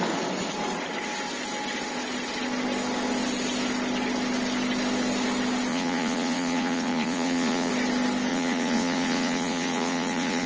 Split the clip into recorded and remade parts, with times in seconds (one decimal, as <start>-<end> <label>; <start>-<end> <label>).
0.0-5.7 recorded; 5.7-7.7 remade; 7.7-8.3 recorded; 8.3-10.5 remade